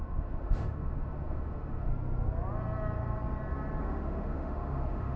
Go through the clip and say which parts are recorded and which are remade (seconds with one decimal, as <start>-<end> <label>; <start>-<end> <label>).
0.0-1.9 remade; 1.9-3.8 recorded; 3.8-5.2 remade